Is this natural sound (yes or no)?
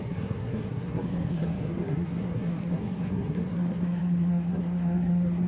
no